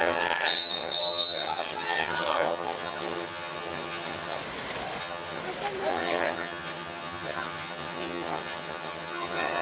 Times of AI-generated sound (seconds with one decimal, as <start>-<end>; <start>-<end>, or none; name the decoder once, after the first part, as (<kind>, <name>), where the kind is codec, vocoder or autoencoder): 0.0-4.4 (vocoder, HiFi-GAN); 5.0-5.4; 5.9-9.6